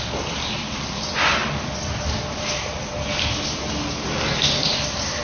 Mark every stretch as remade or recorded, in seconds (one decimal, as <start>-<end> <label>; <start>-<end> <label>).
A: 0.0-5.2 recorded